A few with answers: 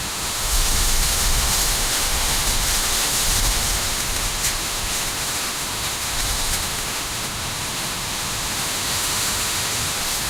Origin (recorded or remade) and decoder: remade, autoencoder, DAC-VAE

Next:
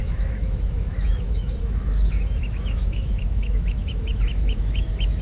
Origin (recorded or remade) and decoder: remade, autoencoder, DAC-VAE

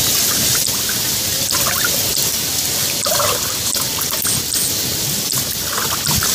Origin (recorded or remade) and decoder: recorded